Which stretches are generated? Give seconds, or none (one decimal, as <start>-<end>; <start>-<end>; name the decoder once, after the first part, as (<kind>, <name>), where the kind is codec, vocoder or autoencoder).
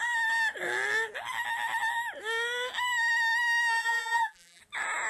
3.8-4.6 (vocoder, BigVGAN v2)